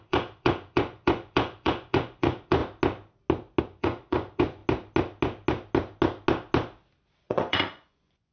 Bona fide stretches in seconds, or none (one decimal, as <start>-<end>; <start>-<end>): 2.6-3.6; 4.6-7.2

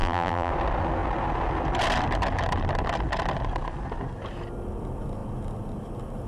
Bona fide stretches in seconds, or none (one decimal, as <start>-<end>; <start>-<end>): 0.5-6.3

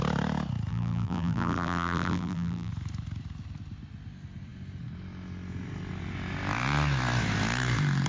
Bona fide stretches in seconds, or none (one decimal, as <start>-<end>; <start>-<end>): 0.0-0.7; 2.7-8.1

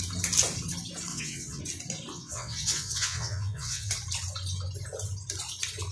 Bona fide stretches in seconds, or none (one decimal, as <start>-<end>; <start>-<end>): 0.0-1.1; 1.6-2.1; 3.9-5.9

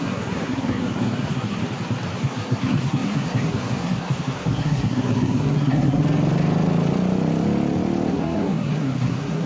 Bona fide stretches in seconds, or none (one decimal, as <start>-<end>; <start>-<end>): 1.6-2.2; 6.0-8.1

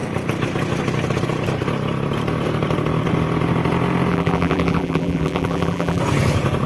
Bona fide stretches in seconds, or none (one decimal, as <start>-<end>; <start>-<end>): 0.0-4.1; 6.0-6.7

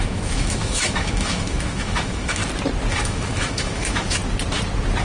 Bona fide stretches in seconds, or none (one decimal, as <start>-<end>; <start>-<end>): 2.4-2.9; 4.2-5.0